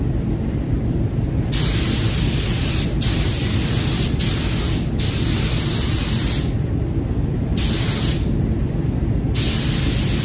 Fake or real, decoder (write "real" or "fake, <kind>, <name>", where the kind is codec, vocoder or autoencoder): real